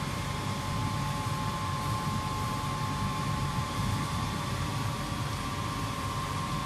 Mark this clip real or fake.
fake